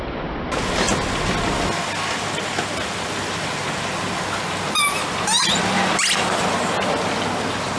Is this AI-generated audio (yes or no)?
no